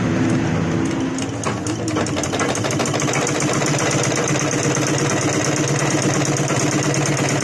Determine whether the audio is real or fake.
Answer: real